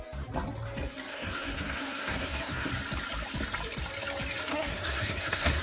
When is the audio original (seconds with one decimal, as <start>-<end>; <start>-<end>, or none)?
0.0-1.1; 2.7-4.5